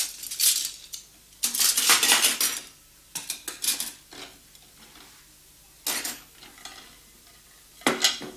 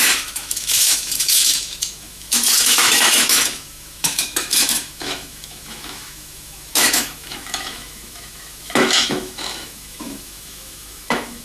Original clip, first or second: first